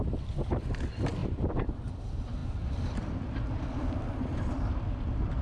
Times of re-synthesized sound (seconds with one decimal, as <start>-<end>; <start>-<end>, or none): 1.2-1.8; 2.4-4.8